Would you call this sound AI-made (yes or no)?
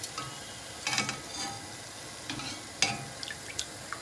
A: no